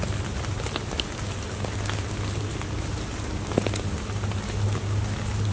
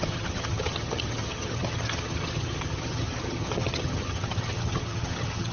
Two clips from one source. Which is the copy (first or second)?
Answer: second